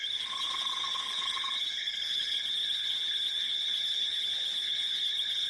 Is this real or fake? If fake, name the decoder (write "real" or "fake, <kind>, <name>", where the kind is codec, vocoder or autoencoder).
fake, codec, HILCodec